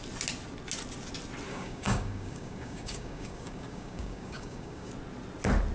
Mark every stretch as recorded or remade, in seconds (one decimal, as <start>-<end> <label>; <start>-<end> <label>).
0.0-1.5 recorded; 1.5-4.9 remade; 4.9-5.7 recorded